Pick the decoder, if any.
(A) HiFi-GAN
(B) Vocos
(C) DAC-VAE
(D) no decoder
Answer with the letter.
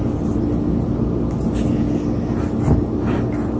D